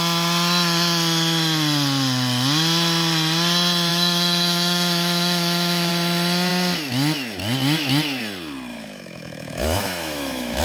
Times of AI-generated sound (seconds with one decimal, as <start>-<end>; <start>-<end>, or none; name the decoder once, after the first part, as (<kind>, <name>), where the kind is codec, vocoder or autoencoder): 3.9-5.9 (autoencoder, DAC-VAE); 8.7-10.6